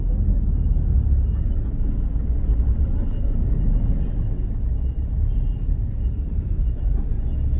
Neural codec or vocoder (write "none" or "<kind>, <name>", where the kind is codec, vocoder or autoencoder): none